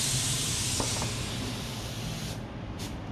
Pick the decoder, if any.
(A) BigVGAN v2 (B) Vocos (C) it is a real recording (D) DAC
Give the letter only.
A